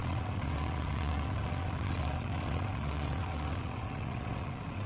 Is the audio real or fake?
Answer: fake